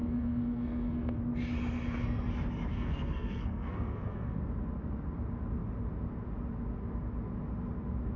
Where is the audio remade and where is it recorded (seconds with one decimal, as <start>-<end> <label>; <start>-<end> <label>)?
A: 0.0-1.2 remade; 1.2-2.7 recorded; 2.7-4.4 remade; 4.4-8.2 recorded